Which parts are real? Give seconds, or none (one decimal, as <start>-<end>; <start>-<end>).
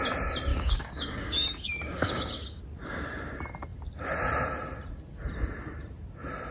0.0-0.5; 2.6-6.5